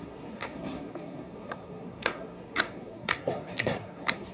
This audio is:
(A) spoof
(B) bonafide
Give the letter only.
A